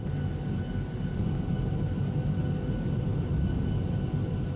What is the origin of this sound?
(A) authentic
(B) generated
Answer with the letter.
A